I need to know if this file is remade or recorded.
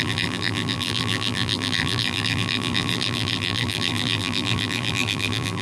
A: remade